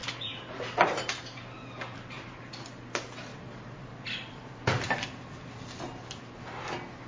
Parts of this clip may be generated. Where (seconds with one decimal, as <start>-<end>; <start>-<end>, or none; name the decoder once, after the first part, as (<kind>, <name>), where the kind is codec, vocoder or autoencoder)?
0.0-2.5 (vocoder, BigVGAN v2); 3.3-6.2